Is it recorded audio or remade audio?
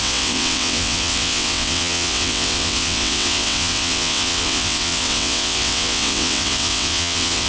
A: remade